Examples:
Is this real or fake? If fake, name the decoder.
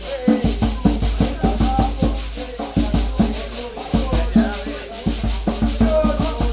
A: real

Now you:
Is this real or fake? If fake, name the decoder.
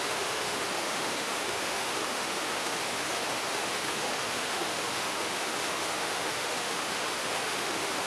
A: fake, autoencoder, DAC-VAE